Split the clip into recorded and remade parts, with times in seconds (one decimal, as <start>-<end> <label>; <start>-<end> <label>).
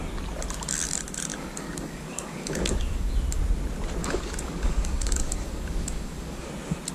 0.0-1.3 recorded; 1.3-3.1 remade; 3.1-4.0 recorded; 4.0-6.5 remade; 6.5-6.9 recorded